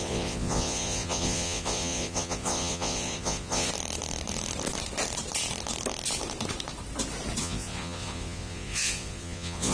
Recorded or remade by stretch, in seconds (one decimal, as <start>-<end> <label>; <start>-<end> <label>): 0.0-3.7 remade; 3.7-7.4 recorded; 7.4-9.7 remade